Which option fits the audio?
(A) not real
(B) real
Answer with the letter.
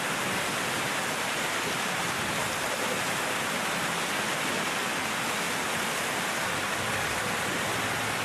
B